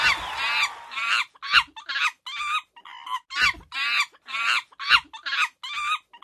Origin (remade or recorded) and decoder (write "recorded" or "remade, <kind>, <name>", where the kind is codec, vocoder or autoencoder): recorded